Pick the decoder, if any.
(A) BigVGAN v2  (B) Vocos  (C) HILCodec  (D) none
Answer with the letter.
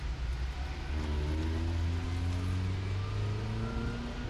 D